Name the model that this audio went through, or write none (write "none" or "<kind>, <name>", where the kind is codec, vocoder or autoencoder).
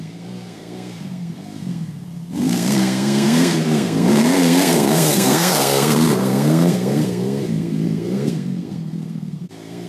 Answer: codec, SNAC